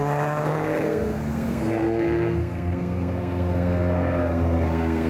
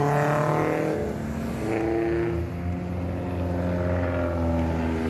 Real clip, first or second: second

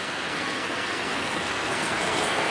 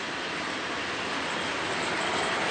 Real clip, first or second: second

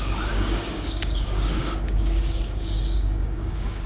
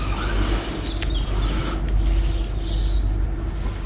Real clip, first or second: second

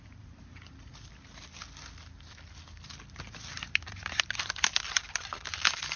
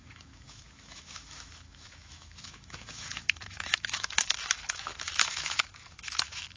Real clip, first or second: first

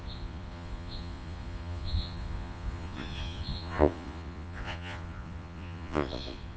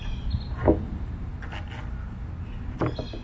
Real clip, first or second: second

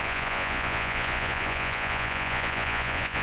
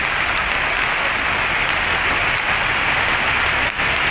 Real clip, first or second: second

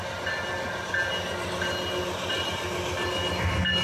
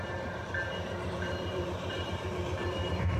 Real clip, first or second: first